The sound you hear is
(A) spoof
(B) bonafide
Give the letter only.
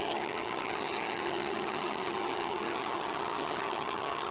A